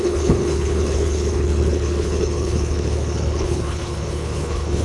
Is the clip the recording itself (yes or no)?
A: no